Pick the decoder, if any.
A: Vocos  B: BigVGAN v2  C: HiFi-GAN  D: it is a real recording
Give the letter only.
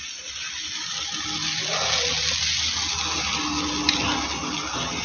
D